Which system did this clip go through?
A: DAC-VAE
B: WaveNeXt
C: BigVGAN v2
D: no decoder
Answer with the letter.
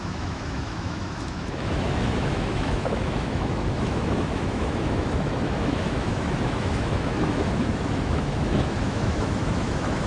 A